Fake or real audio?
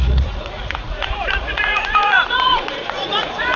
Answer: fake